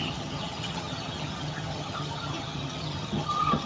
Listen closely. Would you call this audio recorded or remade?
remade